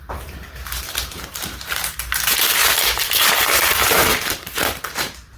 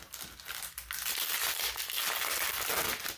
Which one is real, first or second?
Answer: second